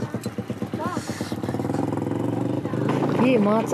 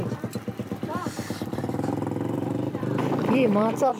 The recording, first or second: first